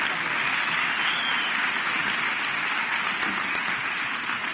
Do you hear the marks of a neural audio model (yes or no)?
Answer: no